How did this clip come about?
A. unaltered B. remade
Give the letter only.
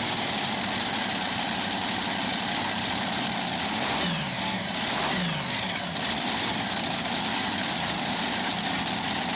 A